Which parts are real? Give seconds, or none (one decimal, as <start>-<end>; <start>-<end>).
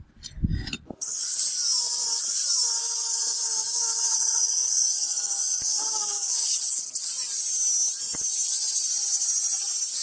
0.0-2.8; 6.6-10.0